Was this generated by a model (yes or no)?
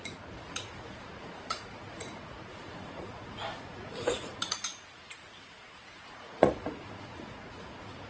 yes